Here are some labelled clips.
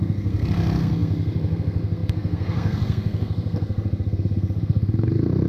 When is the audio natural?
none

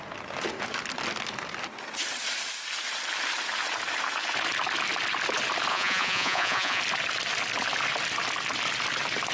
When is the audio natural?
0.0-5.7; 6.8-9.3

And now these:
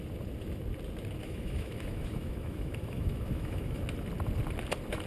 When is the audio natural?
0.0-1.2; 3.8-5.1

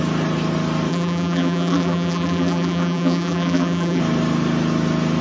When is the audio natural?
0.0-0.9; 4.0-5.2